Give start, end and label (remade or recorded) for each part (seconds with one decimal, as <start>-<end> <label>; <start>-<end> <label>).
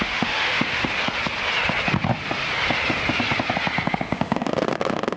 0.0-0.8 remade; 0.8-3.9 recorded; 3.9-5.2 remade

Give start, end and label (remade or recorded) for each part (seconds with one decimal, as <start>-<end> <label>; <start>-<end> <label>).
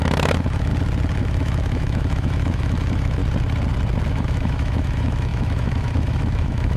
0.0-0.7 remade; 0.7-1.2 recorded; 1.2-3.2 remade; 3.2-4.1 recorded; 4.1-6.8 remade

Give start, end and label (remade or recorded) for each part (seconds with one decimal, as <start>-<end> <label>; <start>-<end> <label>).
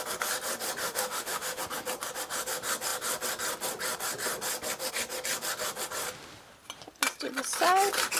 0.0-0.8 recorded; 0.8-1.6 remade; 1.6-8.2 recorded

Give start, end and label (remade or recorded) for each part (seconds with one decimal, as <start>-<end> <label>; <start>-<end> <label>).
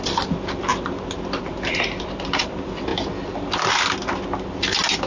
0.0-5.1 recorded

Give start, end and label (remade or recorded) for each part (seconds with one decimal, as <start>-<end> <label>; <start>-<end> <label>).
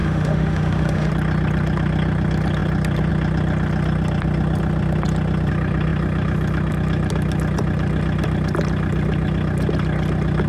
0.0-1.1 remade; 1.1-10.5 recorded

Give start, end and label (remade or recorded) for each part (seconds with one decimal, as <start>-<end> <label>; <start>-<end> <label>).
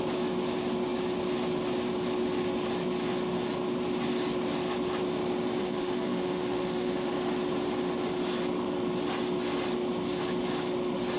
0.0-5.6 recorded; 5.6-7.1 remade; 7.1-11.2 recorded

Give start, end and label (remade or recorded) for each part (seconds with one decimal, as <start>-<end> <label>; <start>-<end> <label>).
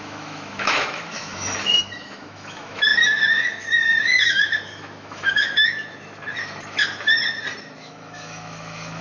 0.0-6.8 remade; 6.8-7.6 recorded; 7.6-9.0 remade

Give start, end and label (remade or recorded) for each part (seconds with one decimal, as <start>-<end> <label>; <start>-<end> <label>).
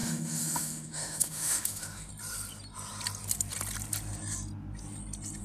0.0-2.1 remade; 2.1-5.4 recorded